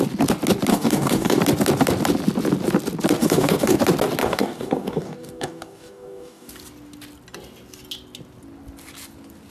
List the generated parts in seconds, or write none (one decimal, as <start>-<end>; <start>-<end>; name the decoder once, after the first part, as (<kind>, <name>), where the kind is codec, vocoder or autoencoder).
0.7-1.4 (codec, DAC); 3.2-3.8; 4.2-6.5